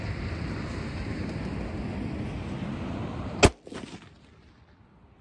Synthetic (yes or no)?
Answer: no